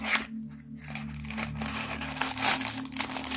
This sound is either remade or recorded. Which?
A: recorded